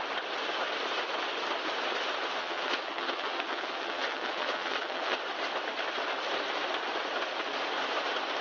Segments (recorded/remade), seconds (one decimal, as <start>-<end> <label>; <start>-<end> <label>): 0.0-2.4 recorded; 2.4-5.2 remade; 5.2-8.4 recorded